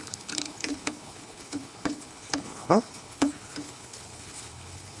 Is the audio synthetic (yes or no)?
yes